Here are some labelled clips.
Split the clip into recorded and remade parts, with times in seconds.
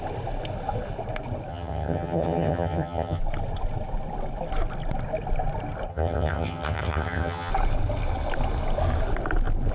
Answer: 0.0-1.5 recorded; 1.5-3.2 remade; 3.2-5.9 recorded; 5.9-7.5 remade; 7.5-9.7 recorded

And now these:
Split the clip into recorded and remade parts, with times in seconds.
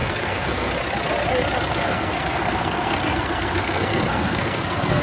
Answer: 0.0-0.7 remade; 0.7-1.7 recorded; 1.7-5.0 remade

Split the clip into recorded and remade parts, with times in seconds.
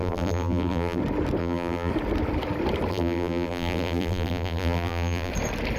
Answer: 0.0-1.0 remade; 1.0-1.4 recorded; 1.4-1.9 remade; 1.9-2.9 recorded; 2.9-5.3 remade; 5.3-5.8 recorded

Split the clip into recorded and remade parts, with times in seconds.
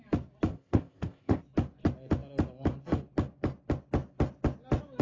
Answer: 0.0-0.5 recorded; 0.5-1.4 remade; 1.4-5.0 recorded